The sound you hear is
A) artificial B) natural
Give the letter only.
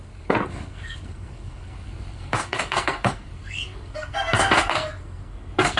A